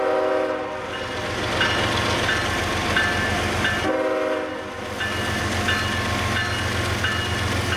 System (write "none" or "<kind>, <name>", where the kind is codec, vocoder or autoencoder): none